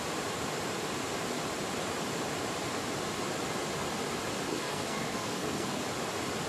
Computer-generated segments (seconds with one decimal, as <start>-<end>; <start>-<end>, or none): 4.5-5.8